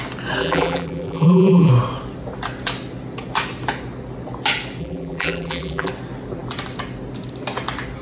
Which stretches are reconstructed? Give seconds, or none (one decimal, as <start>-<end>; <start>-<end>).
0.4-1.7; 4.8-5.9